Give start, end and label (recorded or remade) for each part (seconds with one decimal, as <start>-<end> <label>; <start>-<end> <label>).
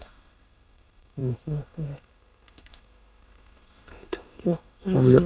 0.0-5.3 remade